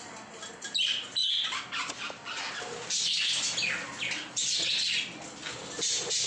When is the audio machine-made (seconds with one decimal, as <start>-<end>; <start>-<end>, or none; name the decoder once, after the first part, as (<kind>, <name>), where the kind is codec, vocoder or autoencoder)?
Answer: none